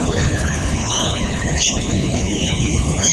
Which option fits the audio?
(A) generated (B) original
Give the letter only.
A